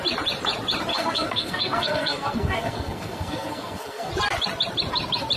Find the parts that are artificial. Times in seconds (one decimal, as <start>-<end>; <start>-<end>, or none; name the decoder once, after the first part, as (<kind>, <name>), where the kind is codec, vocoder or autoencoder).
0.9-4.1 (codec, SNAC)